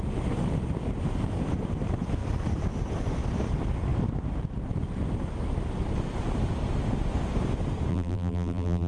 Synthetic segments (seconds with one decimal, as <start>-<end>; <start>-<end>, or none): 7.9-8.9